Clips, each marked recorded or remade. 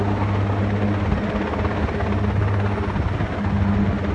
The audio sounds recorded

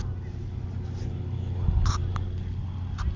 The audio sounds recorded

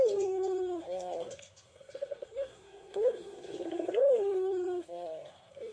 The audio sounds remade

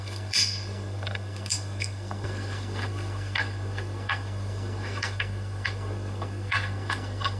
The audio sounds remade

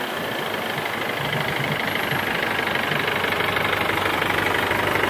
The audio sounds recorded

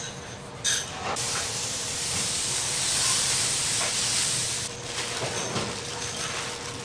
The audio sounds remade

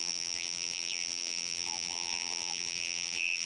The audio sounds remade